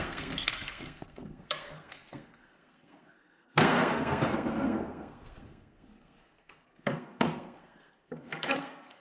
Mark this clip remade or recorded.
remade